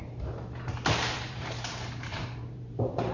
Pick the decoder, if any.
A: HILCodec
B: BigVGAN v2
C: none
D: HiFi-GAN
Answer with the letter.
B